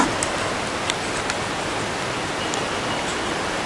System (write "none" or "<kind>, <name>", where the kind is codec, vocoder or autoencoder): none